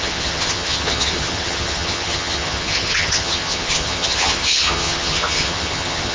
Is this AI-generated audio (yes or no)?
yes